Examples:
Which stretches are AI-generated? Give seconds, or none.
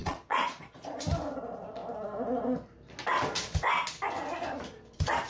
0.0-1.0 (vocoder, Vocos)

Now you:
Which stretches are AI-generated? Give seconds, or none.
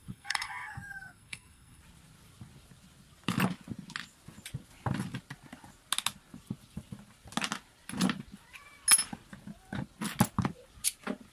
0.0-1.8 (codec, SNAC)